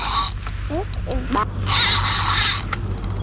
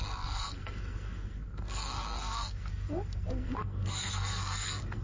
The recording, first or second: first